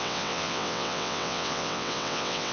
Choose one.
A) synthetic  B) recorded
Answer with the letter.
A